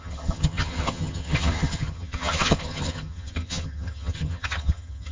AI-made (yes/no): yes